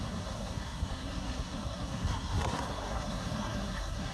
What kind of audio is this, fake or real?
fake